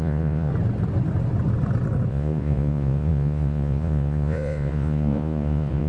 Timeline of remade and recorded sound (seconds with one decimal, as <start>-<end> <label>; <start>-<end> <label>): 0.0-0.5 remade; 0.5-2.1 recorded; 2.1-5.9 remade